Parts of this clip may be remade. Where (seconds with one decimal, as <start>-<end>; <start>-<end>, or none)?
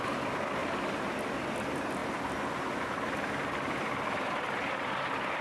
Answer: none